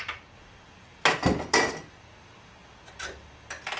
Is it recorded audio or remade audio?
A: recorded